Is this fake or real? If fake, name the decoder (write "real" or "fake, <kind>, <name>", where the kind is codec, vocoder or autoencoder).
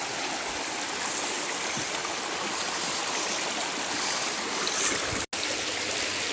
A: real